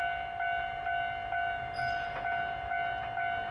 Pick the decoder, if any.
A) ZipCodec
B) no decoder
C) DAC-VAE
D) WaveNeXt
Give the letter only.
B